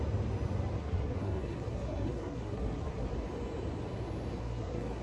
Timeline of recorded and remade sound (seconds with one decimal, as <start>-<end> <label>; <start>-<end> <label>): 0.0-0.8 recorded; 0.8-3.1 remade; 3.1-4.4 recorded; 4.4-5.0 remade